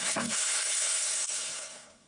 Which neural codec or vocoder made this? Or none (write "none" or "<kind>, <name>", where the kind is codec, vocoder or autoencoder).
codec, SNAC